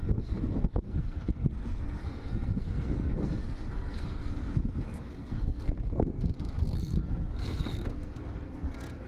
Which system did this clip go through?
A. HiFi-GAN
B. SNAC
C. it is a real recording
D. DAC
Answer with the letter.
B